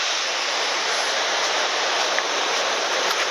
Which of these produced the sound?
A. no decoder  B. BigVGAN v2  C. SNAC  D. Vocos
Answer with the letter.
B